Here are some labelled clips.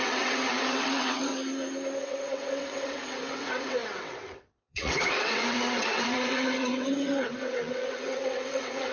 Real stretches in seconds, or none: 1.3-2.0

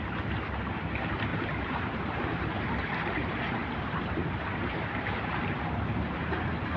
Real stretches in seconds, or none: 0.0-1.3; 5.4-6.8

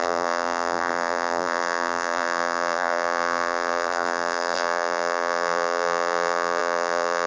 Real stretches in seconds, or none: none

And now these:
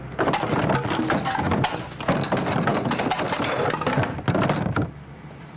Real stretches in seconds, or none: 0.0-5.6